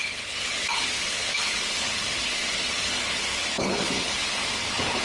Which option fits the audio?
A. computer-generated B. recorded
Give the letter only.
A